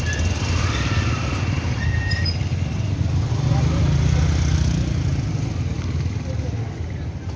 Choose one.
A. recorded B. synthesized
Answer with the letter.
A